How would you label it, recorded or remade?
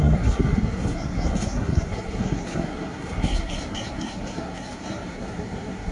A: remade